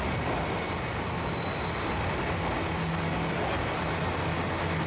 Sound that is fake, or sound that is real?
real